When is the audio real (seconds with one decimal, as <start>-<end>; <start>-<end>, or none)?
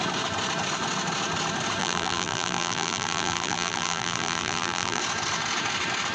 0.0-1.8; 5.0-6.1